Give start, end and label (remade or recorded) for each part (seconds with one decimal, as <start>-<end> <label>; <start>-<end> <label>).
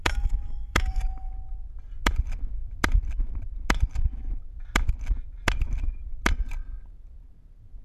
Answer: 0.0-1.3 remade; 1.3-7.8 recorded